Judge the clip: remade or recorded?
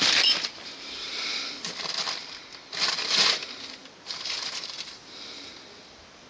remade